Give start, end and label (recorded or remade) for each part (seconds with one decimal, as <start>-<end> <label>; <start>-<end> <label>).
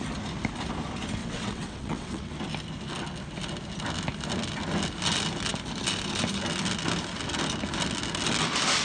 0.0-1.2 recorded; 1.2-2.3 remade; 2.3-8.8 recorded